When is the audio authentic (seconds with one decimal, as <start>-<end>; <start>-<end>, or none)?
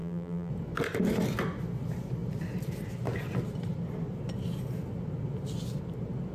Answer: 0.5-6.3